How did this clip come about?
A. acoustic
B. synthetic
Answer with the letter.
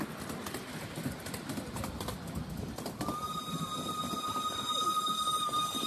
A